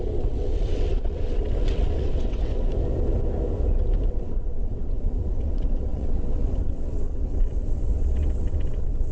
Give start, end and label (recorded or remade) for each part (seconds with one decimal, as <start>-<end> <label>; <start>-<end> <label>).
0.0-2.5 remade; 2.5-4.1 recorded; 4.1-9.1 remade